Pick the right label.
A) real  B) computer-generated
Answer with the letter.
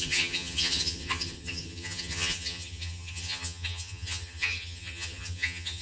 B